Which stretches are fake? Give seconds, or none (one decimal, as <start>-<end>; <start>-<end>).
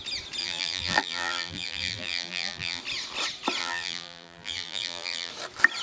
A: 0.4-2.8; 3.6-5.3